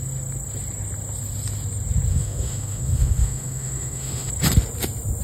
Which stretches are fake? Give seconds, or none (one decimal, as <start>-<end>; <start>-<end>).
2.1-4.3